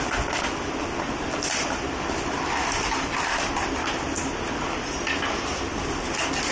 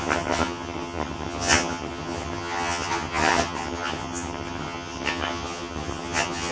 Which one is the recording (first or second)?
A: first